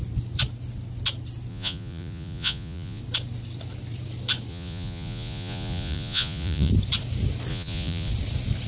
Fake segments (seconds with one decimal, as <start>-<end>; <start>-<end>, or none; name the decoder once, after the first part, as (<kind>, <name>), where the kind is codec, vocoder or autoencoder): 1.5-3.0 (vocoder, Vocos); 4.5-6.7; 7.5-8.1